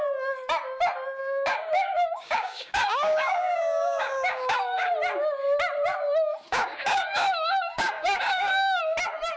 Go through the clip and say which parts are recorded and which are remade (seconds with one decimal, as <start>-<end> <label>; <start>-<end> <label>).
0.0-1.2 recorded; 1.2-4.9 remade; 4.9-6.5 recorded; 6.5-8.8 remade; 8.8-9.4 recorded